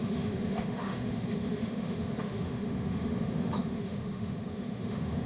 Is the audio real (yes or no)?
no